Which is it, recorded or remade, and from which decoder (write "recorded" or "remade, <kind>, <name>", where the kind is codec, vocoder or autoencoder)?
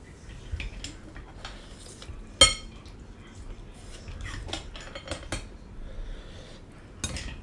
recorded